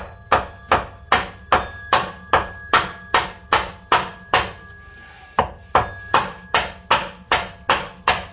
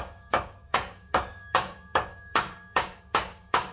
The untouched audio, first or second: first